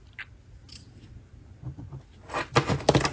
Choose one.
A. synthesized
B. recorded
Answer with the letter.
B